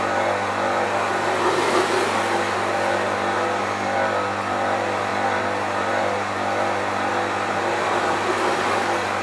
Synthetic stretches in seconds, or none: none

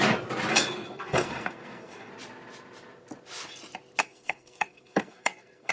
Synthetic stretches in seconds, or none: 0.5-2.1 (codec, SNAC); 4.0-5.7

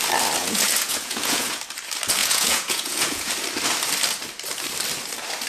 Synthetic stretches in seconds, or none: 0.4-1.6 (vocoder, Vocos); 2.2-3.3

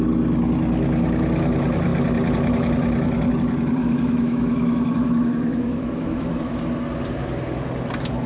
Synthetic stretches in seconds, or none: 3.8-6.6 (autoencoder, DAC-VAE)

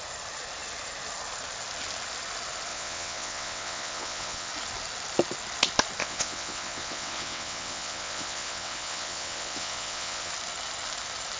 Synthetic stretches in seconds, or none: 2.7-4.5 (vocoder, WaveNeXt); 6.0-10.3

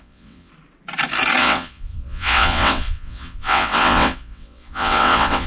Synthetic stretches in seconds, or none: 0.0-0.5 (vocoder, WaveNeXt); 1.4-5.5

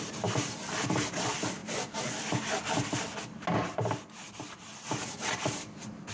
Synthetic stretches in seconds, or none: none

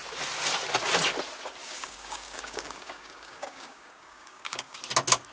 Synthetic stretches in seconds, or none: 1.6-4.8 (codec, DAC)